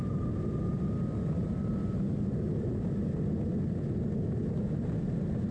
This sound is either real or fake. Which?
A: real